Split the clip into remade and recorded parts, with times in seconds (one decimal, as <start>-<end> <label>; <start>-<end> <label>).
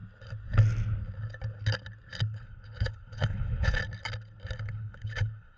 0.0-2.2 recorded; 2.2-3.8 remade; 3.8-4.6 recorded; 4.6-5.6 remade